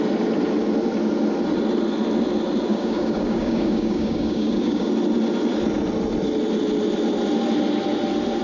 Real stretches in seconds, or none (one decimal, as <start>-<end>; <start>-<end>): 0.0-2.7; 4.9-8.4